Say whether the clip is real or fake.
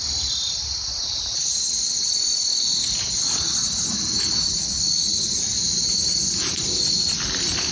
real